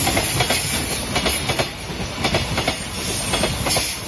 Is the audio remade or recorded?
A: recorded